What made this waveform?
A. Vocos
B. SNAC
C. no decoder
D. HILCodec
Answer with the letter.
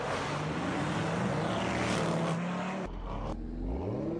C